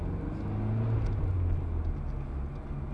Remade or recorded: recorded